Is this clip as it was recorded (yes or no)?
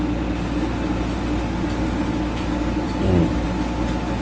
yes